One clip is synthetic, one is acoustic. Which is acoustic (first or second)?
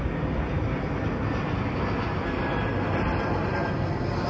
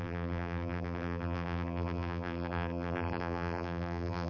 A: first